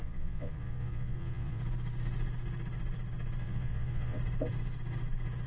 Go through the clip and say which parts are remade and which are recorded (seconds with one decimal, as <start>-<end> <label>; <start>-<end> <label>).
0.0-1.6 remade; 1.6-3.4 recorded; 3.4-4.2 remade; 4.2-5.5 recorded